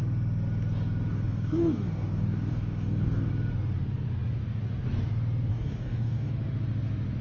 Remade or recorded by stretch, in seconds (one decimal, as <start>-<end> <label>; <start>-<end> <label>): 0.0-1.1 recorded; 1.1-3.3 remade; 3.3-5.5 recorded; 5.5-6.3 remade; 6.3-7.2 recorded